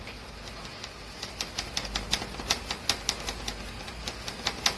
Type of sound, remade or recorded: recorded